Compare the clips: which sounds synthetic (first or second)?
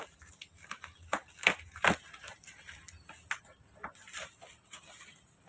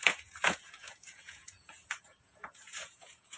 second